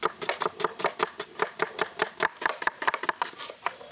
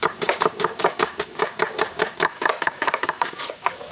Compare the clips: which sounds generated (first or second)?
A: second